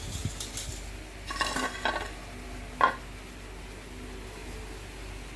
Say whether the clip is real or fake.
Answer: real